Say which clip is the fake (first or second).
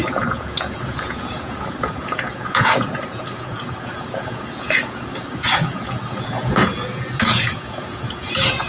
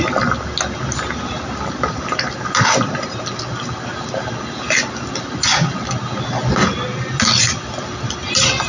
first